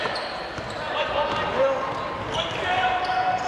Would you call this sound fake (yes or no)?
no